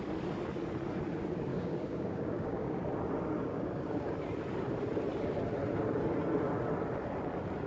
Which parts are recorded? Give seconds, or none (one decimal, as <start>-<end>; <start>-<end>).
0.0-1.5; 2.8-3.5; 4.1-7.7